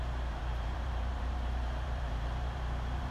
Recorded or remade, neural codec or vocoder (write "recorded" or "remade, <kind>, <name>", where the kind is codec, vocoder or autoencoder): remade, vocoder, BigVGAN v2